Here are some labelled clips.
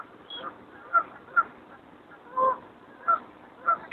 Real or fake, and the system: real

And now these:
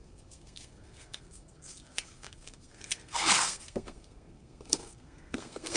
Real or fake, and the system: fake, codec, SNAC